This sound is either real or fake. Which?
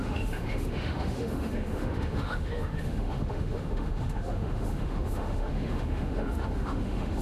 fake